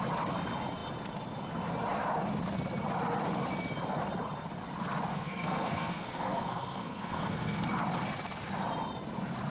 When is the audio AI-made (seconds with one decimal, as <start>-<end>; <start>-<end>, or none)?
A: 5.1-7.6